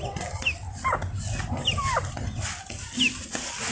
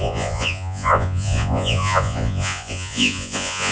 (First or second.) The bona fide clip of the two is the first